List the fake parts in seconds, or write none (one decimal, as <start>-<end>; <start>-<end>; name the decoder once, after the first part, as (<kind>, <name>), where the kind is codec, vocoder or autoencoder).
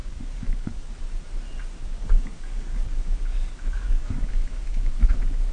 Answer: 0.0-0.9 (codec, DAC); 1.8-5.1